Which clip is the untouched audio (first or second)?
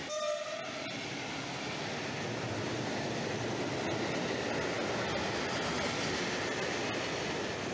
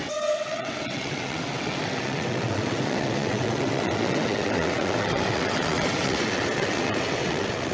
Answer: first